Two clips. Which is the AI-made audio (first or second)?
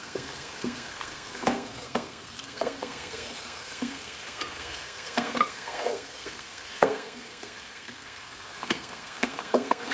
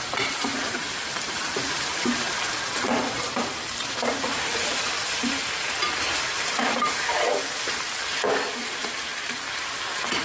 first